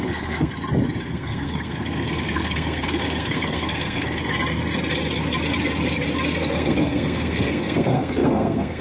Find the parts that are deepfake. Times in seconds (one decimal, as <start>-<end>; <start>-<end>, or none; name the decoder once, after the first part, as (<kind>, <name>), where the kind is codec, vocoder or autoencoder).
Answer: 0.0-0.5 (codec, SNAC); 1.1-4.2; 6.4-8.8